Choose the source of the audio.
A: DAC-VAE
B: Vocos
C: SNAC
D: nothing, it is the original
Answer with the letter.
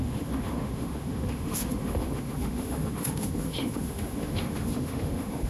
A